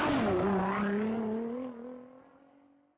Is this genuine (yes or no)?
yes